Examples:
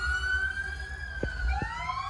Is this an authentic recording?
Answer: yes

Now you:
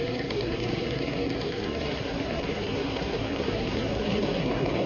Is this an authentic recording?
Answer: no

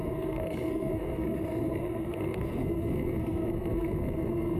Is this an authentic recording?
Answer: no